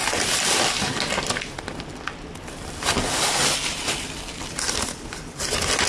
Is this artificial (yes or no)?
no